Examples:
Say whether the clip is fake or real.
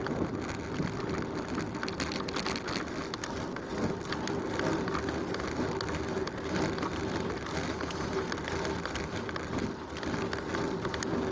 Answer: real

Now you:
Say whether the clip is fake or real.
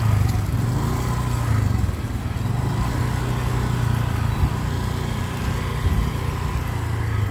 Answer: real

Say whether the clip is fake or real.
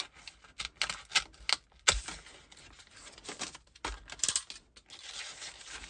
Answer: real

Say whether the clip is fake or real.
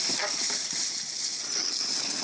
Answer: real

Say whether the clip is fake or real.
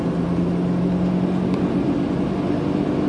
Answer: real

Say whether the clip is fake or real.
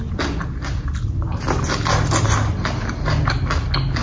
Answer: real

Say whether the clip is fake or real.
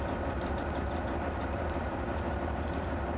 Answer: fake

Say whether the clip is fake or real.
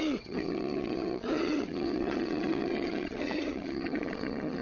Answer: fake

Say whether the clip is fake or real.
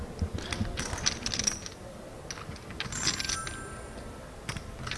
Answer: real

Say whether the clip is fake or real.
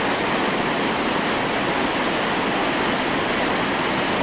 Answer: real